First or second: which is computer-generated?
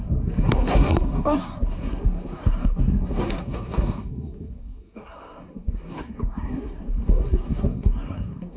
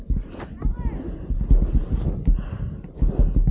first